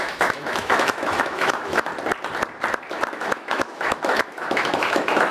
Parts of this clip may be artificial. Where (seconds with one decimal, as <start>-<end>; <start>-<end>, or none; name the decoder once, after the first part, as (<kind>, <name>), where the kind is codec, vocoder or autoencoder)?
0.0-1.9 (autoencoder, DAC-VAE); 3.1-5.3